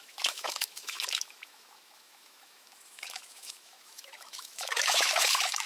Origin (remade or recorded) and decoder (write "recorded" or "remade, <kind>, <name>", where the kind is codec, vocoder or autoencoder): remade, autoencoder, DAC-VAE